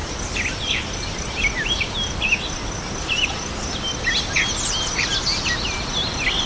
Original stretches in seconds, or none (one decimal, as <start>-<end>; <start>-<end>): 0.0-6.5